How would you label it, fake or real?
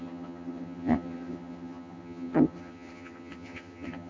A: fake